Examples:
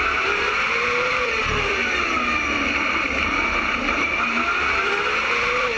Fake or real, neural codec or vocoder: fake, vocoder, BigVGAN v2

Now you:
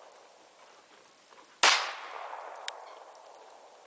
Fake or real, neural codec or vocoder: real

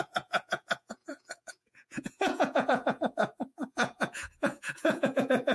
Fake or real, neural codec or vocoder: fake, vocoder, Vocos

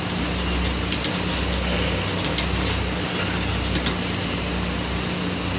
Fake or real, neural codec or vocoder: real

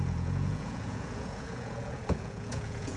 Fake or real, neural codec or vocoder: fake, vocoder, Vocos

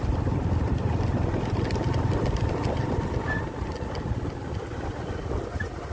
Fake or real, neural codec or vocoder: real